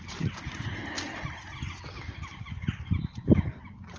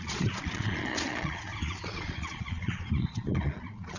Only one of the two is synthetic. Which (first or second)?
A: second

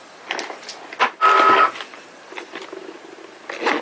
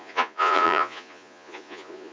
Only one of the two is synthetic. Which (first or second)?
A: second